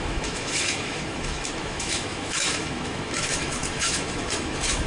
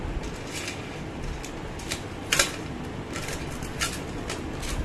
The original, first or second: second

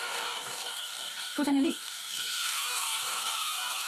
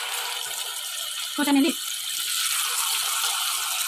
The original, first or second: second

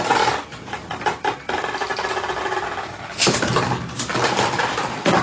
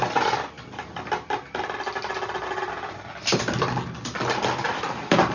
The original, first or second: second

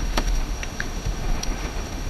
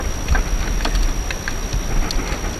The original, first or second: second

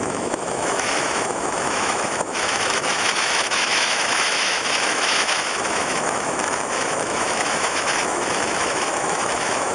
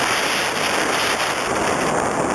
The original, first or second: second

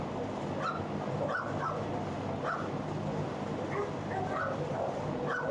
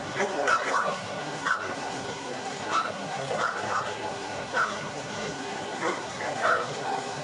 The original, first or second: first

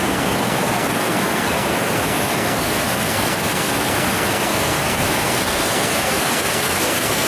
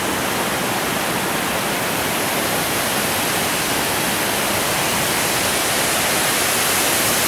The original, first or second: second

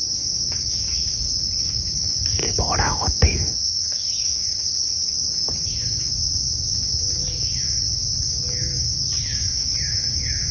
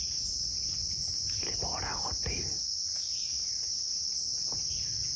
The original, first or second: second